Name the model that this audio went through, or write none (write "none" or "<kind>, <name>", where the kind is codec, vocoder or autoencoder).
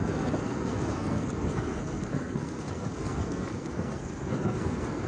codec, SNAC